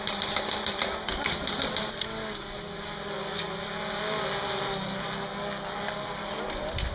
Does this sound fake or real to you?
real